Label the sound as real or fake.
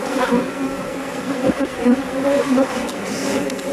fake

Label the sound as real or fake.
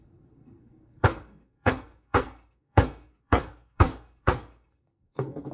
fake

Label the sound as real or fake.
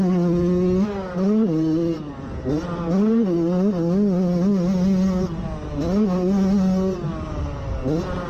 real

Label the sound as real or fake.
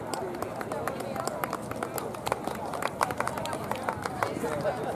real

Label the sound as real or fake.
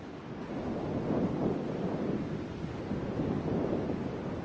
real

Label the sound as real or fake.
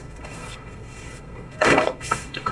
fake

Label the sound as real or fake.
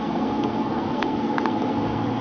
fake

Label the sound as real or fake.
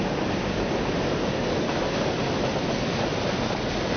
real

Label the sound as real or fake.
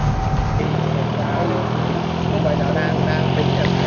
real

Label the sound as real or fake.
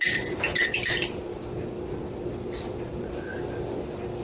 real